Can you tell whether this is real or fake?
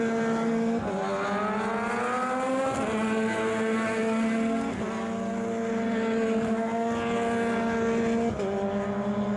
real